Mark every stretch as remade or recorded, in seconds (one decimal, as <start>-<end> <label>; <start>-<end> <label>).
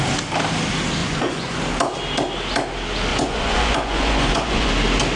0.0-1.0 recorded; 1.0-1.6 remade; 1.6-3.1 recorded; 3.1-4.7 remade; 4.7-5.2 recorded